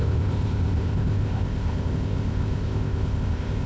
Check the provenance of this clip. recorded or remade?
remade